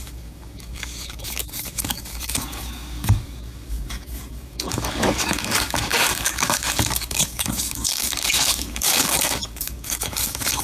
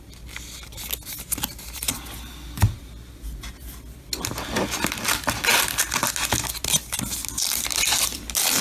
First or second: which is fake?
first